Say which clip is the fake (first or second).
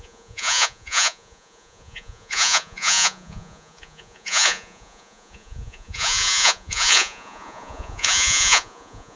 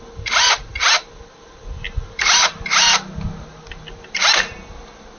first